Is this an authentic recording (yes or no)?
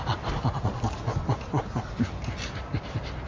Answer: yes